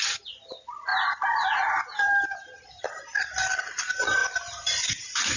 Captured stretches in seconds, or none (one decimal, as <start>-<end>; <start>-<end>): 0.0-0.9; 3.0-4.2; 4.9-5.4